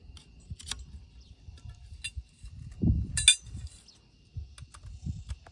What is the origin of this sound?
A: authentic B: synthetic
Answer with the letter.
A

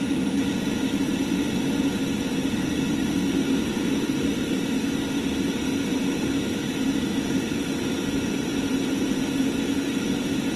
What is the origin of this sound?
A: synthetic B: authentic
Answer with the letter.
B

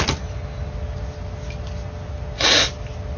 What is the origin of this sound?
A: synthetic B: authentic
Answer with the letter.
B